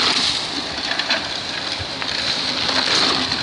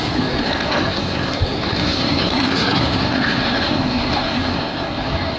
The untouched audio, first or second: first